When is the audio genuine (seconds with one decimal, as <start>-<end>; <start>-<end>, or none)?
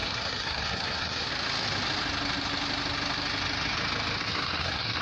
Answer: 1.3-4.2